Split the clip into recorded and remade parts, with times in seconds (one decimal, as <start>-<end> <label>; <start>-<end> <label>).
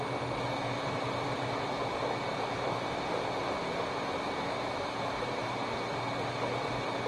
0.0-0.8 recorded; 0.8-5.1 remade; 5.1-7.1 recorded